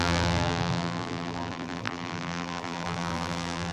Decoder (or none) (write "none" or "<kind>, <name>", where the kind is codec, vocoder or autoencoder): vocoder, BigVGAN v2